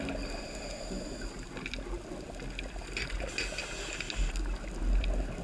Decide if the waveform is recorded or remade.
recorded